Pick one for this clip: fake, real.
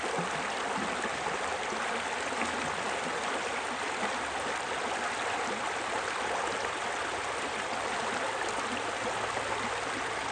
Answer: real